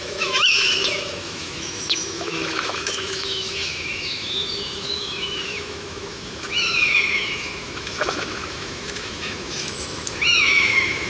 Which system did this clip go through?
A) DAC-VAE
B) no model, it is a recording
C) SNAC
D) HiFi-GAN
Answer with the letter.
A